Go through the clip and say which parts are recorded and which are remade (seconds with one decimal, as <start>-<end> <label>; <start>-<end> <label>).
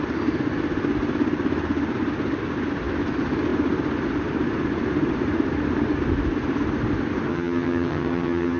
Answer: 0.0-7.3 recorded; 7.3-8.6 remade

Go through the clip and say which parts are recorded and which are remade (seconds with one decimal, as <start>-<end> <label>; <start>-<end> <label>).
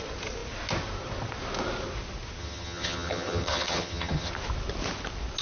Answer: 0.0-2.4 recorded; 2.4-4.3 remade; 4.3-5.4 recorded